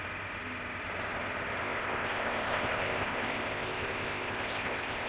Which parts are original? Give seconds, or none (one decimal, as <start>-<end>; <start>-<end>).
0.0-1.6